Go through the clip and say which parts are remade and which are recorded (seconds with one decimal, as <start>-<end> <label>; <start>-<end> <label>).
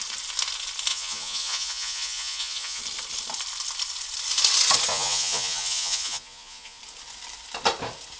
0.0-0.9 recorded; 0.9-2.8 remade; 2.8-4.9 recorded; 4.9-6.8 remade; 6.8-8.2 recorded